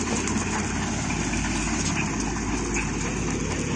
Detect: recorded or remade recorded